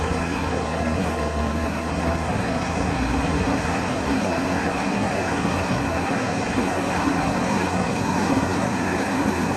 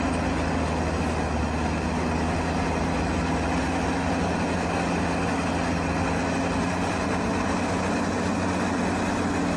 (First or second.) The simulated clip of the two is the first